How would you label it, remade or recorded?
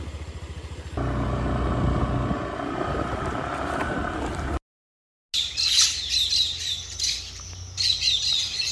recorded